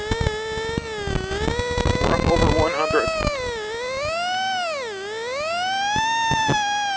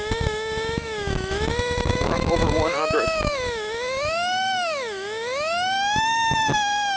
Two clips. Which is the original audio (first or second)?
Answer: first